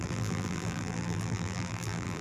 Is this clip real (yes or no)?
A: no